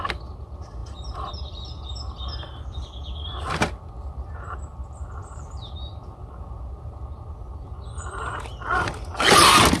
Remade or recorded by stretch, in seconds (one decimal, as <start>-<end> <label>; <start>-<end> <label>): 0.0-9.8 recorded